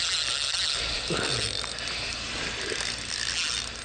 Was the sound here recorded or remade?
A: recorded